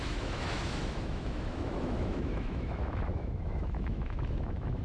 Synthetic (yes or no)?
yes